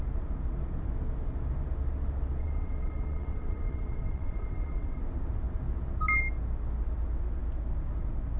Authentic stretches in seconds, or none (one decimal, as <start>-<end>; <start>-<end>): 0.0-2.4; 5.0-8.4